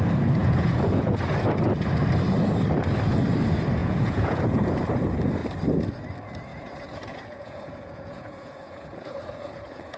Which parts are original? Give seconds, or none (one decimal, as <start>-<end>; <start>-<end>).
0.0-0.4; 1.1-3.8; 4.4-6.5